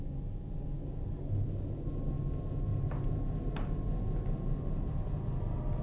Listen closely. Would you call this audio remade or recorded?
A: recorded